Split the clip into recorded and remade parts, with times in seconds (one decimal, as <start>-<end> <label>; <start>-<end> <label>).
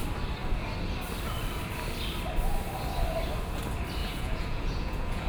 0.0-4.0 recorded; 4.0-5.3 remade